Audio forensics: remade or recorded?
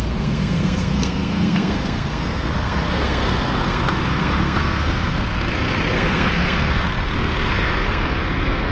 remade